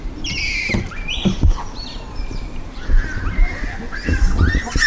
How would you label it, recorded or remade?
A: recorded